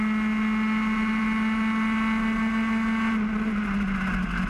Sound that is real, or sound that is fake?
real